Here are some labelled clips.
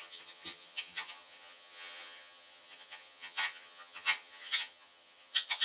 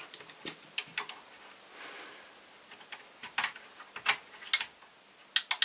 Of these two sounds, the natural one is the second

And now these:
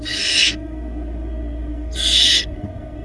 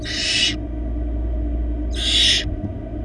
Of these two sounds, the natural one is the second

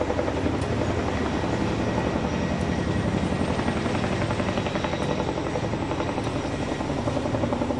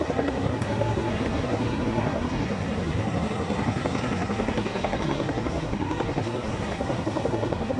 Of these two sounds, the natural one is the first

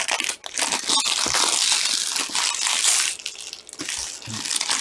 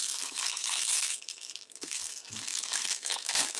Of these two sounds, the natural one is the first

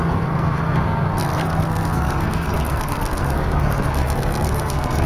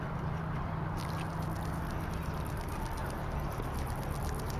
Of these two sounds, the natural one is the second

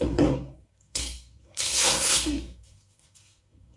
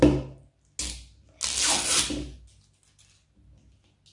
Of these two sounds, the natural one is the second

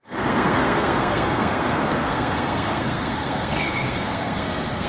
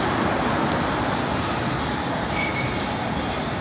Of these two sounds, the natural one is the second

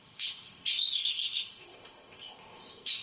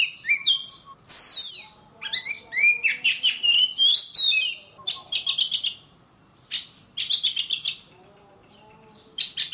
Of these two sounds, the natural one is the second